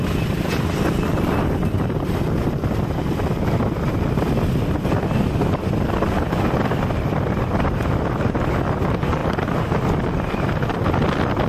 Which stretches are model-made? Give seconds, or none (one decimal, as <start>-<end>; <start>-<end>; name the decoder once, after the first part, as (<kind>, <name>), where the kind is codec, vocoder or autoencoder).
none